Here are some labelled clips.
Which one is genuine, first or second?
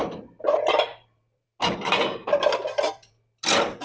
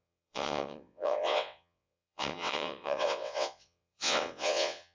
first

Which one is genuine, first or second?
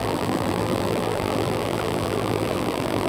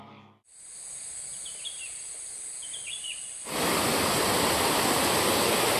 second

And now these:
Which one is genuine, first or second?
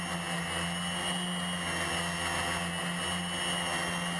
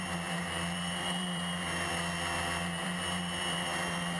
first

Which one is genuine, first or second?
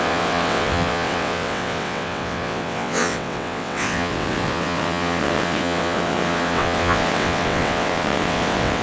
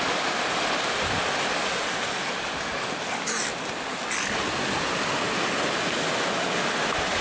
second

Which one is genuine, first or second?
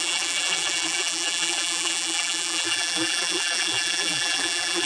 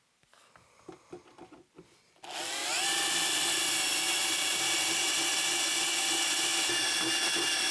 second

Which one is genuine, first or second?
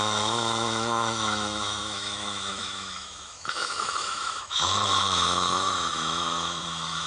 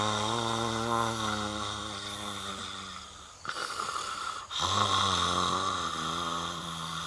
second